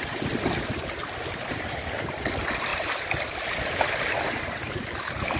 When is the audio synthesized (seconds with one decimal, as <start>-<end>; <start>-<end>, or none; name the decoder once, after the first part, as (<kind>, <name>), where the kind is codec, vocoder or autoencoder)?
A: none